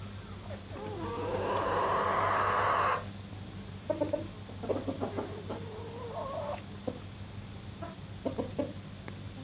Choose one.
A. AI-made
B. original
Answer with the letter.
B